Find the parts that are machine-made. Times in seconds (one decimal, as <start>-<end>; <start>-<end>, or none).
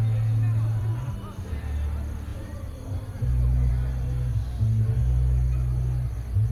none